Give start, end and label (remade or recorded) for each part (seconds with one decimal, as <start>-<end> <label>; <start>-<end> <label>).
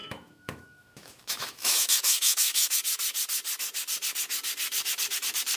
0.0-2.8 remade; 2.8-5.6 recorded